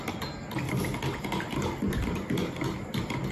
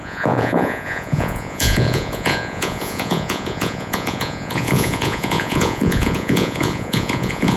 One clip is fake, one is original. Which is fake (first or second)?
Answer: second